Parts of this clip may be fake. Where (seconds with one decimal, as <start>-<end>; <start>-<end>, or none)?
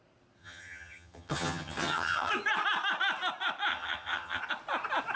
0.4-2.3; 3.7-4.4